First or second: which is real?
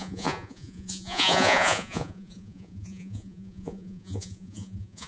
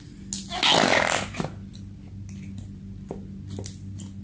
second